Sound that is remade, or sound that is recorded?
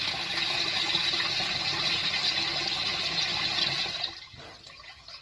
recorded